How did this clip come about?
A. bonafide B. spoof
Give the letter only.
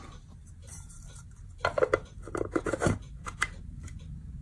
A